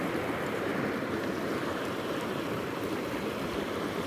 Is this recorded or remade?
remade